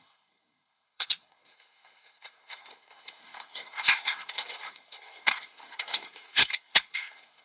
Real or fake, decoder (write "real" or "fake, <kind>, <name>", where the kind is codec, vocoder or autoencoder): fake, codec, SNAC